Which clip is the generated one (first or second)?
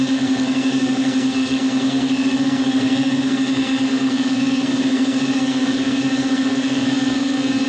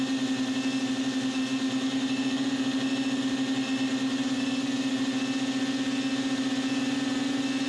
first